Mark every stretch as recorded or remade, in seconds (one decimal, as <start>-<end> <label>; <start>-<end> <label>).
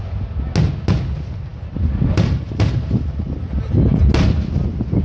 0.0-1.5 recorded; 1.5-4.0 remade; 4.0-5.0 recorded